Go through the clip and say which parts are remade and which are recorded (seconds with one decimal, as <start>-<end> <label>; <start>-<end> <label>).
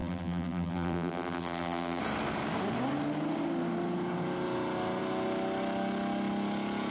0.0-2.0 remade; 2.0-6.9 recorded